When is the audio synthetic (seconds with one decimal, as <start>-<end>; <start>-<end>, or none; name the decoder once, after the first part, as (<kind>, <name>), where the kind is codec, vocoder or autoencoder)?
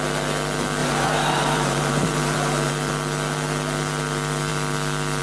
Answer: 0.8-2.7 (vocoder, BigVGAN v2)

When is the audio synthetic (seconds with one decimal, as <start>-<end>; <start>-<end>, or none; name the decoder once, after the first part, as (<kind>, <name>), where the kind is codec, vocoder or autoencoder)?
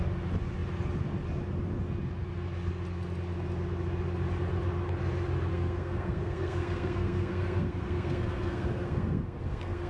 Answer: 5.5-9.9 (codec, SNAC)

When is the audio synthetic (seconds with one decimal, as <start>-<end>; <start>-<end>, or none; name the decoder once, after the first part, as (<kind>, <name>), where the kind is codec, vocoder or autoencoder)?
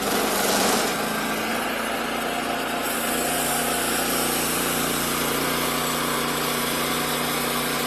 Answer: none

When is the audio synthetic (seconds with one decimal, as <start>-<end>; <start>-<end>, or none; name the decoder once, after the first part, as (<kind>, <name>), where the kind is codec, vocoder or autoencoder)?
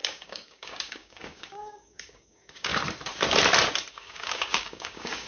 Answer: 0.0-2.7 (codec, DAC); 3.9-5.3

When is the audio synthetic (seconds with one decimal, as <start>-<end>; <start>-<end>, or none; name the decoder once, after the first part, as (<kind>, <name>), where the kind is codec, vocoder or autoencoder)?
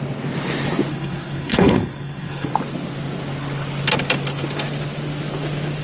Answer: 0.9-2.5 (codec, SNAC)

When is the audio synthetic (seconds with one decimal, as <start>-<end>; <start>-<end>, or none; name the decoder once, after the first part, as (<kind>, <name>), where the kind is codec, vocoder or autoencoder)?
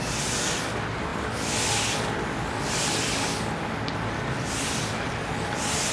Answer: none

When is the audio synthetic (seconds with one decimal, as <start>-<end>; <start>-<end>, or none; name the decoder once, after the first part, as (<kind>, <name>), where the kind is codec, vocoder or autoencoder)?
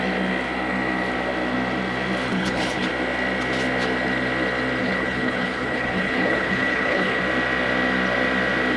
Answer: 2.3-2.9 (codec, HILCodec); 4.8-7.2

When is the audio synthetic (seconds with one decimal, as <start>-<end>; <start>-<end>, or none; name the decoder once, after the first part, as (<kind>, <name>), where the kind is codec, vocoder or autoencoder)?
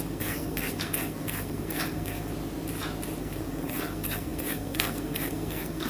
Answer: 0.0-2.3 (codec, SNAC); 3.2-5.9